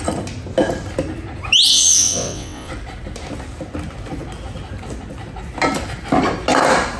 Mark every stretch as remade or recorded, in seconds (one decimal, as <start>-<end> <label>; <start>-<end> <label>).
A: 0.0-1.7 recorded; 1.7-2.7 remade; 2.7-7.0 recorded